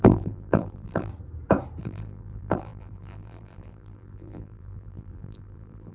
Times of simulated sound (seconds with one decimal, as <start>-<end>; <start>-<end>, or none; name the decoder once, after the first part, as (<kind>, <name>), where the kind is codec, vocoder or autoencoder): 0.0-1.1 (vocoder, BigVGAN v2); 1.8-5.9